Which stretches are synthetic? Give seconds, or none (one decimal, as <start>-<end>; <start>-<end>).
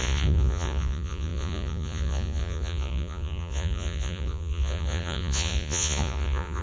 0.0-6.6